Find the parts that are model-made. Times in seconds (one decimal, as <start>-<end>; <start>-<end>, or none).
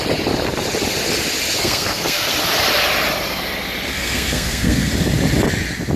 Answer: 1.6-2.3; 3.9-4.9